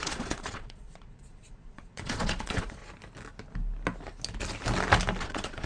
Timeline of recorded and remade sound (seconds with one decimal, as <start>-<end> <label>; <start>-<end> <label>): 0.0-2.8 remade; 2.8-5.2 recorded; 5.2-5.7 remade